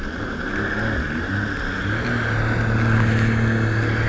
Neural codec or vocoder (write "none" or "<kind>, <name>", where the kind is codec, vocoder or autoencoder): none